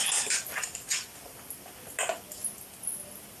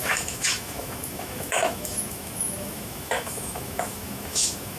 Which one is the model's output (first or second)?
second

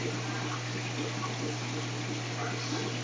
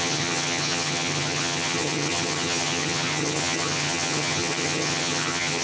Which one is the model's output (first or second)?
second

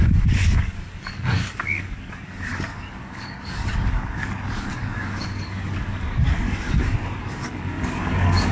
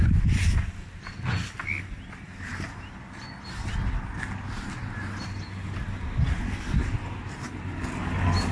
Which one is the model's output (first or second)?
first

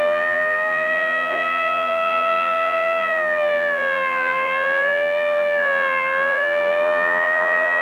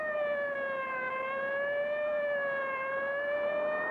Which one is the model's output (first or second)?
first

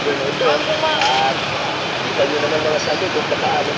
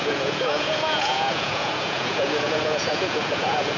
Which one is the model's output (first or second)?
second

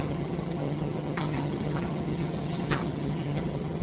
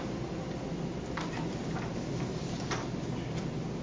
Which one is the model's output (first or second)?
first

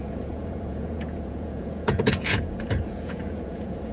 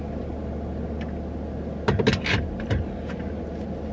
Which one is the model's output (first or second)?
first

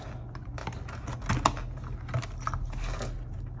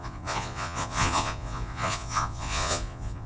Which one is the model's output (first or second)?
second